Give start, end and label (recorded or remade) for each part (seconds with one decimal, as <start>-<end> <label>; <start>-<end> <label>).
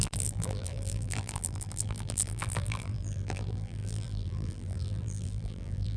0.0-6.0 remade